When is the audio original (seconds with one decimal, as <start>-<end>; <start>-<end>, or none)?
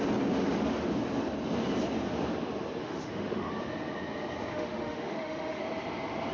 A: 0.0-2.8; 3.5-4.5; 5.6-6.3